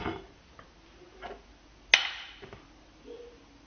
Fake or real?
real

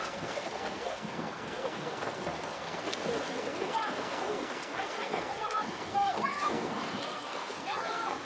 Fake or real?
fake